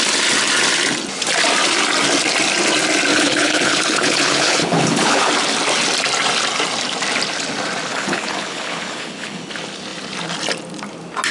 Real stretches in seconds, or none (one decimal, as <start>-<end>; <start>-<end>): 0.0-3.1; 5.3-7.9; 9.5-11.3